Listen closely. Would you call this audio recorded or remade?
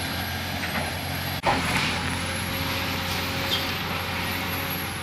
recorded